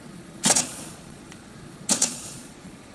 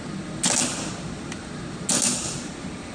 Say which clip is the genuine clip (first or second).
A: second